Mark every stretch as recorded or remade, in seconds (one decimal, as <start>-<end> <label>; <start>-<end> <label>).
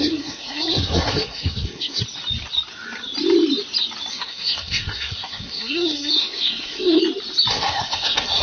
0.0-2.0 remade; 2.0-4.1 recorded; 4.1-7.0 remade; 7.0-7.5 recorded; 7.5-8.4 remade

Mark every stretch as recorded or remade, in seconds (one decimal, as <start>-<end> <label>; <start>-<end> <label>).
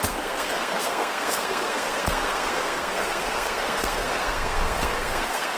0.0-5.6 remade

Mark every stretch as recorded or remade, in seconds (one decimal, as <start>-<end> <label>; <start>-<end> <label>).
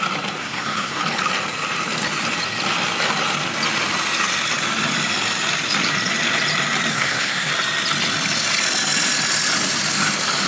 0.0-0.4 recorded; 0.4-1.0 remade; 1.0-6.9 recorded; 6.9-7.5 remade; 7.5-10.5 recorded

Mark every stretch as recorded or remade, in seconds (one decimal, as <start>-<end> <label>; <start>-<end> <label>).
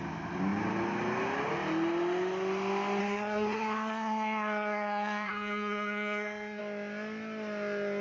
0.0-3.0 recorded; 3.0-6.6 remade; 6.6-8.0 recorded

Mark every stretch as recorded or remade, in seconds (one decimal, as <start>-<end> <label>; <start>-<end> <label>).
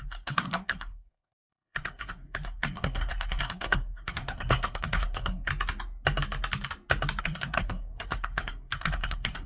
0.0-5.5 remade; 5.5-7.2 recorded; 7.2-9.5 remade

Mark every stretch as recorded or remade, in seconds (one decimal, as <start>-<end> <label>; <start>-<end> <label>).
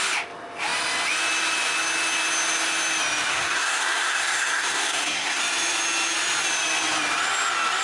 0.0-3.3 recorded; 3.3-5.4 remade; 5.4-7.8 recorded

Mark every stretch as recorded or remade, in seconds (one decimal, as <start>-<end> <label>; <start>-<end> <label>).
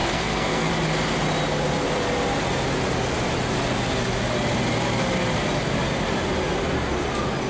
0.0-0.7 remade; 0.7-7.5 recorded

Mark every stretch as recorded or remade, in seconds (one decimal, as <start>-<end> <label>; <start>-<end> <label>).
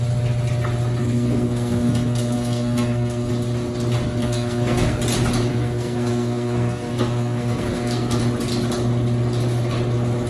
0.0-1.0 recorded; 1.0-3.3 remade; 3.3-4.2 recorded; 4.2-5.0 remade; 5.0-5.5 recorded; 5.5-8.2 remade; 8.2-10.3 recorded